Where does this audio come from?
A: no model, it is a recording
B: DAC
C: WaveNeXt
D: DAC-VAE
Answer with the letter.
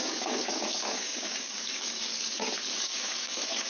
B